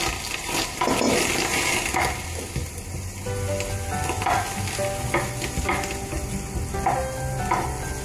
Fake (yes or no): no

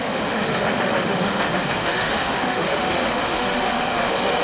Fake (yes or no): yes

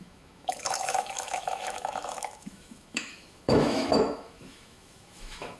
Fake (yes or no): yes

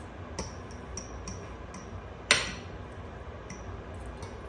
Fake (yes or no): no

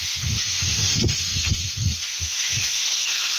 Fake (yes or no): yes